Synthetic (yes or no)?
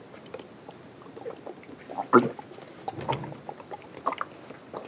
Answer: no